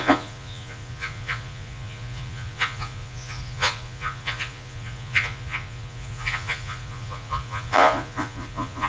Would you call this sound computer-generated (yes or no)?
yes